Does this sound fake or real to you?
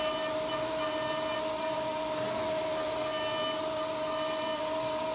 real